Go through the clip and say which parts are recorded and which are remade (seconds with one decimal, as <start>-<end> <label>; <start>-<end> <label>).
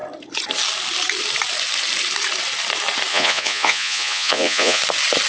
0.0-3.1 recorded; 3.1-4.8 remade; 4.8-5.3 recorded